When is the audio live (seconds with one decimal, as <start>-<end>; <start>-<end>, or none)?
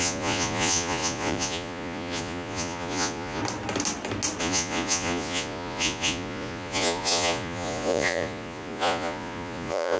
3.4-4.4